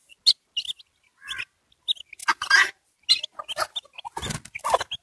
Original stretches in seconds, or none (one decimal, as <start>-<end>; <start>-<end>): 0.0-5.0